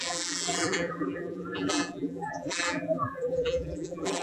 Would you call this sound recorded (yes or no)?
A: no